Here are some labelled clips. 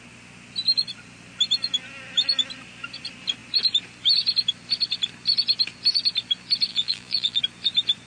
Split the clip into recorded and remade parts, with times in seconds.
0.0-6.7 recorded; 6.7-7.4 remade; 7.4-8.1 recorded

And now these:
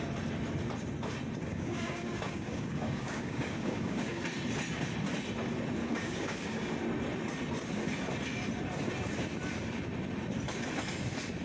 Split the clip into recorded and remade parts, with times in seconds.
0.0-1.5 recorded; 1.5-4.2 remade; 4.2-5.8 recorded; 5.8-6.7 remade; 6.7-11.4 recorded

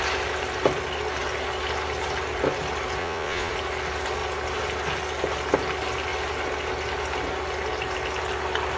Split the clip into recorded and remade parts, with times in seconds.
0.0-3.0 recorded; 3.0-3.5 remade; 3.5-8.8 recorded

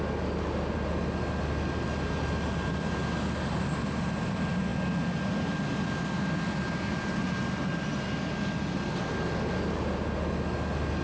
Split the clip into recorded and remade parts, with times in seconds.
0.0-11.0 recorded

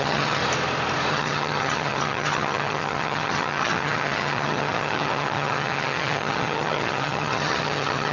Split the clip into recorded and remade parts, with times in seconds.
0.0-0.4 remade; 0.4-1.1 recorded; 1.1-8.1 remade

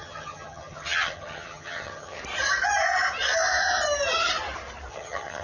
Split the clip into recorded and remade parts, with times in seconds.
0.0-2.2 remade; 2.2-4.9 recorded; 4.9-5.4 remade

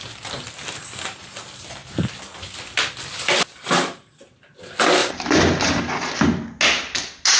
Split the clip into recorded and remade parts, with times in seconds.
0.0-7.4 recorded

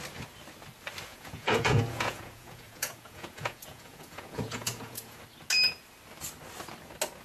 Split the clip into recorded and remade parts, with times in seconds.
0.0-1.1 recorded; 1.1-5.2 remade; 5.2-7.2 recorded